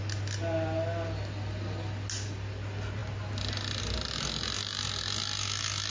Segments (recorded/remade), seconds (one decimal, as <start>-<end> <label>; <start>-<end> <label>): 0.0-5.9 recorded